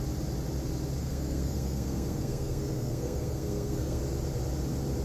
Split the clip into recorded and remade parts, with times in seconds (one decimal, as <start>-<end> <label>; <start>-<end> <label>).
0.0-1.0 recorded; 1.0-4.0 remade; 4.0-5.0 recorded